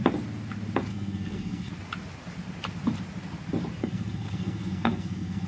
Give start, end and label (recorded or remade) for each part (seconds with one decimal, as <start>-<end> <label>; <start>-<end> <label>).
0.0-0.9 recorded; 0.9-1.7 remade; 1.7-3.8 recorded; 3.8-5.5 remade